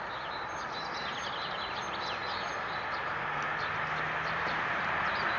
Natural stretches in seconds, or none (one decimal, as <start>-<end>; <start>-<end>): 0.0-5.4